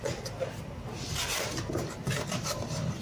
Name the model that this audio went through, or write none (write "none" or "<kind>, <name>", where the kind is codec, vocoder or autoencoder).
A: none